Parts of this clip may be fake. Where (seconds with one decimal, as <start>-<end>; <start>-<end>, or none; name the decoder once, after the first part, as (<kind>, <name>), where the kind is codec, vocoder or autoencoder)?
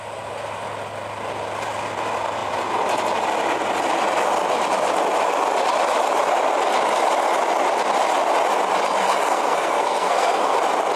9.0-10.6 (codec, SNAC)